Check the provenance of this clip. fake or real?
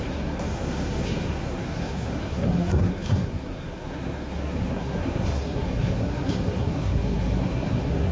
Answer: fake